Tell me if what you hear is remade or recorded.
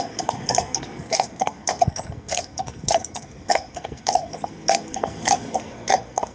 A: remade